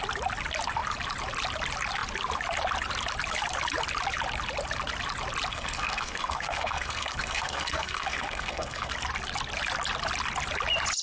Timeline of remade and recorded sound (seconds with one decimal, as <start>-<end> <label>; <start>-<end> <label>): 0.0-5.5 recorded; 5.5-8.9 remade; 8.9-11.0 recorded